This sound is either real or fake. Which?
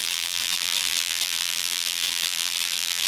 fake